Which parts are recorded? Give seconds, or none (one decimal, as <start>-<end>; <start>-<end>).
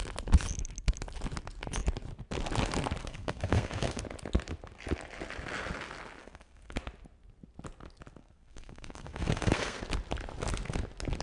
0.0-3.0; 4.0-6.2; 6.8-8.2; 9.8-11.2